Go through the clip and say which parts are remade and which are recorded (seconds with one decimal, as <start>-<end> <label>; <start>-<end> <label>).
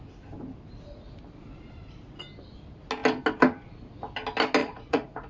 0.0-4.6 recorded; 4.6-5.3 remade